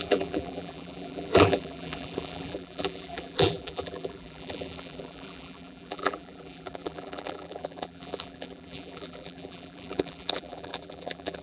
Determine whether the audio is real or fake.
fake